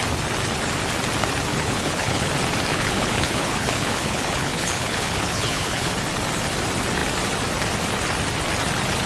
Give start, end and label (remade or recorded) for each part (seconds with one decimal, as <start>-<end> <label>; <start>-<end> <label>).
0.0-1.5 recorded; 1.5-2.3 remade; 2.3-2.7 recorded; 2.7-5.9 remade; 5.9-9.1 recorded